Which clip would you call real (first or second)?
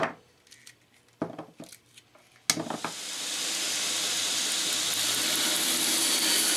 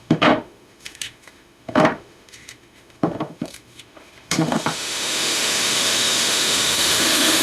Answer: first